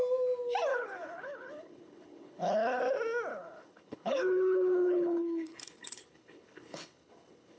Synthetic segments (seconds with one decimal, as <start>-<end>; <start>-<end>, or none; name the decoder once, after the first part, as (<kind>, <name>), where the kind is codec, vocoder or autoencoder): 0.7-2.8 (codec, HILCodec); 3.3-7.6